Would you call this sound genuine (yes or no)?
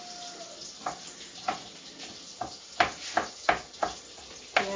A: yes